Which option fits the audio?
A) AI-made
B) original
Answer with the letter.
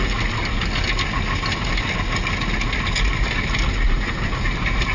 B